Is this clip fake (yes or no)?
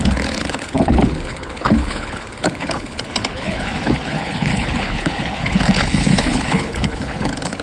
yes